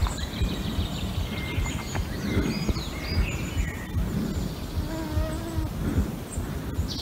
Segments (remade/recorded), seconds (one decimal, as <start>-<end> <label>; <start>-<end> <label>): 0.0-1.1 remade; 1.1-7.0 recorded